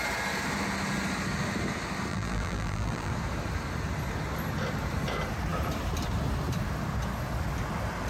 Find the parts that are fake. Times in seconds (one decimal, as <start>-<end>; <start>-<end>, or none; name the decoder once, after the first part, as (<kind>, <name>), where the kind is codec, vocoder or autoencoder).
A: 2.1-3.1 (vocoder, BigVGAN v2)

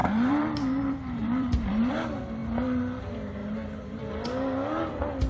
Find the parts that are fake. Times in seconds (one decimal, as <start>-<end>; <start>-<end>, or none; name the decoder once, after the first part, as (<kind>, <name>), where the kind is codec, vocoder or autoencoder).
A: 0.0-1.9 (vocoder, BigVGAN v2); 3.4-4.0

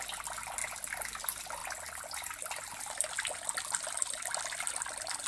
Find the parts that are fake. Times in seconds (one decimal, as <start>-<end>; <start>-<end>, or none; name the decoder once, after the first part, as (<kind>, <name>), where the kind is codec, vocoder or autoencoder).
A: none

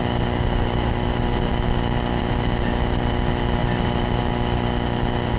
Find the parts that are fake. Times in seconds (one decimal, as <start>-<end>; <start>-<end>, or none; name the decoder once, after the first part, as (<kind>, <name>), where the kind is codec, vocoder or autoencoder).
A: none

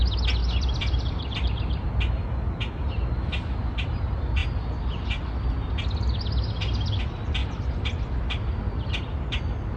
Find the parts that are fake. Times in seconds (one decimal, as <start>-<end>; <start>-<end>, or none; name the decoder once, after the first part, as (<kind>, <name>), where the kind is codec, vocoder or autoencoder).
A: 0.4-1.9 (vocoder, BigVGAN v2); 7.4-8.9

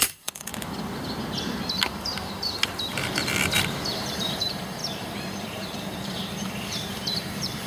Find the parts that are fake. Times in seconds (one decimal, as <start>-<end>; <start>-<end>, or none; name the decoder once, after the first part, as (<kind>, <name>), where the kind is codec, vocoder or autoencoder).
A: 0.0-0.5 (vocoder, BigVGAN v2); 3.9-7.7

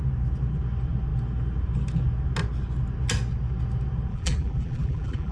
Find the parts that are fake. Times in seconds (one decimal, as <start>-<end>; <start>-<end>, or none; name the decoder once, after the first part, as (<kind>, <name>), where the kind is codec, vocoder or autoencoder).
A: 4.1-5.3 (vocoder, BigVGAN v2)

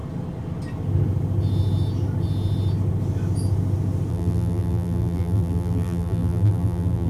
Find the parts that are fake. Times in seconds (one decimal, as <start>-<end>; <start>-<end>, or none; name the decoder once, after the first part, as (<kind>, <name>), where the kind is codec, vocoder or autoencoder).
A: 4.1-7.1 (vocoder, BigVGAN v2)